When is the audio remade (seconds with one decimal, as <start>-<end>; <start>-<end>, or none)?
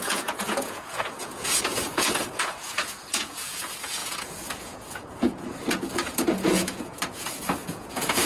0.0-8.3